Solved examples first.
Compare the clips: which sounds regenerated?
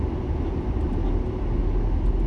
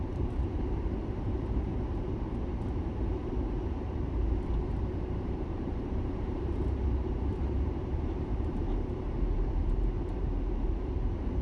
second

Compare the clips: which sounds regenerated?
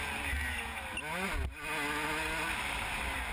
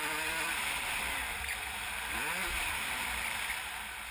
second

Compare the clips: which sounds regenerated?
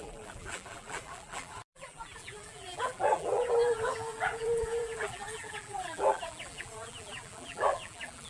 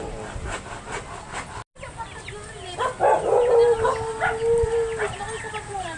first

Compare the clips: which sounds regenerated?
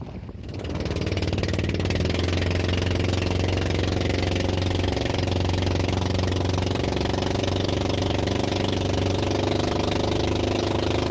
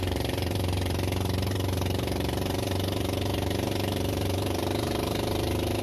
second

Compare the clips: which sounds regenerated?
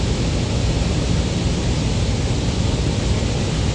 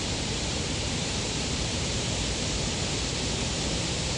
second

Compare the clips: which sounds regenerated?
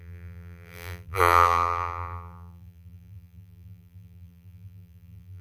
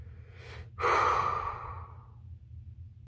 first